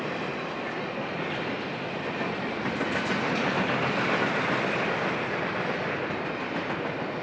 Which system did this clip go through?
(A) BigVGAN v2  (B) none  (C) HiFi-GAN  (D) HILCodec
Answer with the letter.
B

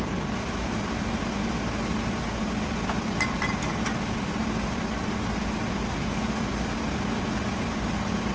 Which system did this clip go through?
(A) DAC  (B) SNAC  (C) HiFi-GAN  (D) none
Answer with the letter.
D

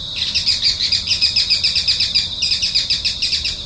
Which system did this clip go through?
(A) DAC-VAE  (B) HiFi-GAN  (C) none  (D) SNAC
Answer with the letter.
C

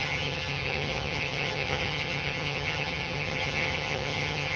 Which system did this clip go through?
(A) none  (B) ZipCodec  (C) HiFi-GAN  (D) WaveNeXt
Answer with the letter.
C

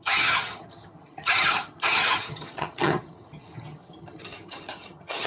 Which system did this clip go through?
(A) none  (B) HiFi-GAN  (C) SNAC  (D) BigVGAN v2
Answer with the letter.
B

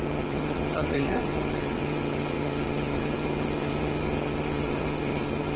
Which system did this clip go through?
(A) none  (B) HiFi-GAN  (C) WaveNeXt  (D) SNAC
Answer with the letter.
B